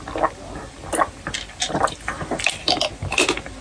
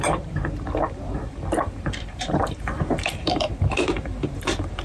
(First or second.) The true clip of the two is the first